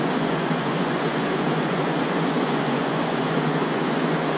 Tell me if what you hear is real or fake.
fake